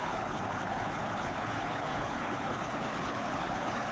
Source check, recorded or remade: remade